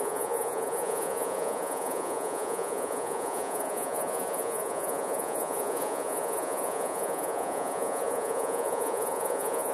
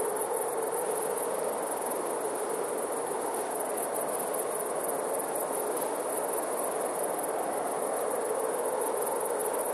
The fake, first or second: first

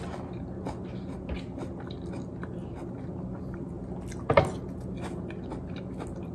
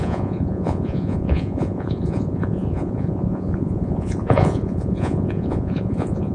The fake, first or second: second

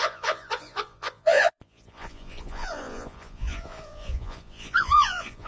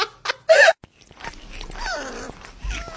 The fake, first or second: first